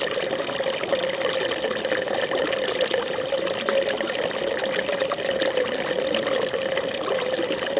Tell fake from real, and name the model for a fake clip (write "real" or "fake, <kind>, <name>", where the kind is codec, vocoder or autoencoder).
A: real